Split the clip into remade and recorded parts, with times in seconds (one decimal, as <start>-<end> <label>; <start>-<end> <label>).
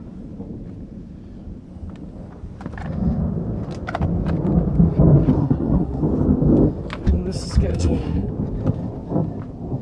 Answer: 0.0-5.4 recorded; 5.4-6.0 remade; 6.0-7.7 recorded; 7.7-8.3 remade; 8.3-9.8 recorded